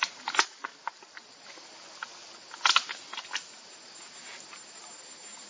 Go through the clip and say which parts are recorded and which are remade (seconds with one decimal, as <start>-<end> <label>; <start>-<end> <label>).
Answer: 0.0-5.5 recorded